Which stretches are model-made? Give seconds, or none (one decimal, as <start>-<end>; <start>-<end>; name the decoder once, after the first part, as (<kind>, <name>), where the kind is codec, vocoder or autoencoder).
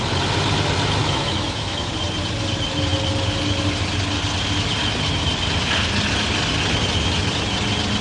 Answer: 1.0-1.9 (autoencoder, DAC-VAE)